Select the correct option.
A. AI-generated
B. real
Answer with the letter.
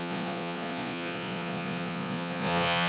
A